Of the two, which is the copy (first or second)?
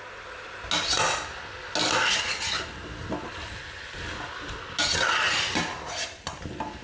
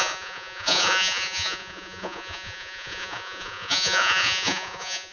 second